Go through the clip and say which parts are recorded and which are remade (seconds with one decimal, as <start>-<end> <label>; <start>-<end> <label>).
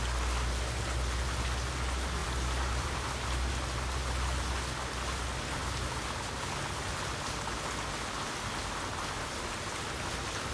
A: 0.0-2.2 recorded; 2.2-3.5 remade; 3.5-10.5 recorded